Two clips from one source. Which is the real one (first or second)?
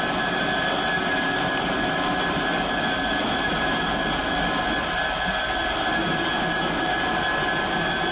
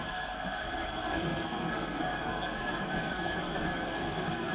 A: first